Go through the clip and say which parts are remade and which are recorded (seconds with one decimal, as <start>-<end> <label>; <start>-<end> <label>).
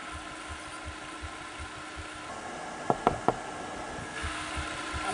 0.0-4.0 recorded; 4.0-4.5 remade; 4.5-5.1 recorded